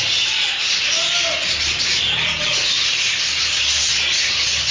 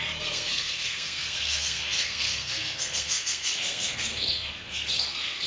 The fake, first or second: second